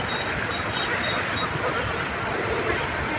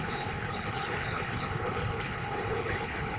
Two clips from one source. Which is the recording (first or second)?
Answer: first